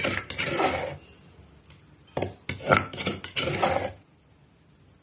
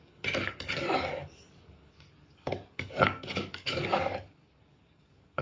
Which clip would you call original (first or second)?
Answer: first